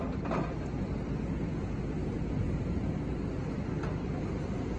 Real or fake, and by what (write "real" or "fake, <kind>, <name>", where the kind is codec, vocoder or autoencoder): real